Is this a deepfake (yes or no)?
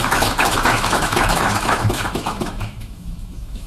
yes